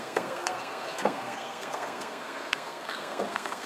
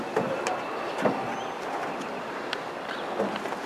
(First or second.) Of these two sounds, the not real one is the first